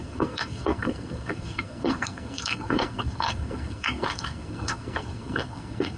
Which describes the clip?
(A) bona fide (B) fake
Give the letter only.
B